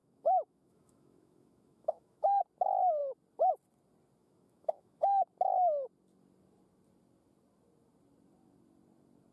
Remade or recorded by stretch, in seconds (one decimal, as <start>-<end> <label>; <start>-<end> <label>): 0.0-2.4 remade; 2.4-4.2 recorded; 4.2-5.3 remade; 5.3-9.3 recorded